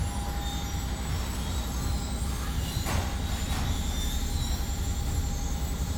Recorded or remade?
recorded